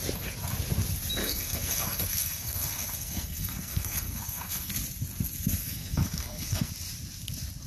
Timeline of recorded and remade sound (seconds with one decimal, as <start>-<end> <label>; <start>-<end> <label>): 0.0-1.2 recorded; 1.2-4.7 remade; 4.7-5.6 recorded; 5.6-6.7 remade; 6.7-7.7 recorded